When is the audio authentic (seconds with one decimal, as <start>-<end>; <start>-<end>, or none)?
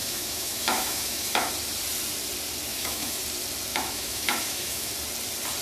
1.5-2.7; 3.2-3.7; 4.9-5.6